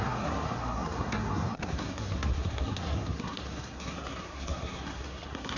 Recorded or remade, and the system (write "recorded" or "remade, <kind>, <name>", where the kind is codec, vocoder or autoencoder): remade, codec, SNAC